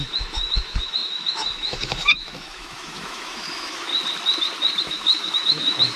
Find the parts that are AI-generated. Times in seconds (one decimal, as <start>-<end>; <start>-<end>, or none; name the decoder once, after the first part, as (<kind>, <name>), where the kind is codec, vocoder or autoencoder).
0.0-3.9 (autoencoder, DAC-VAE); 4.8-6.0